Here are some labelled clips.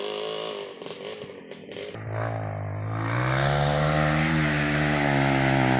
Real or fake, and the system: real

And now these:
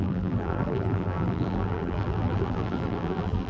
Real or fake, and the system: fake, vocoder, BigVGAN v2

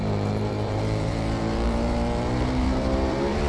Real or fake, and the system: fake, vocoder, BigVGAN v2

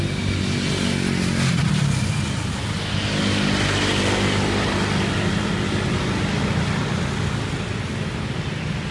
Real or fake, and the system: real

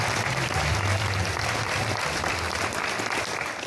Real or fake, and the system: fake, vocoder, BigVGAN v2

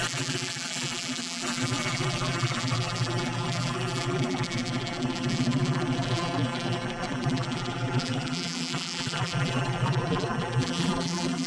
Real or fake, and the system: fake, vocoder, BigVGAN v2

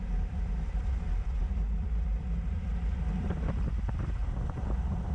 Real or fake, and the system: fake, vocoder, BigVGAN v2